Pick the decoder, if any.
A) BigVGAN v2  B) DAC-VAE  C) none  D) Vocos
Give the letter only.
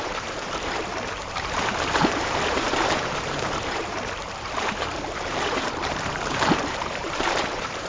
A